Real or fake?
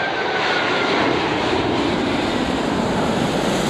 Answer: fake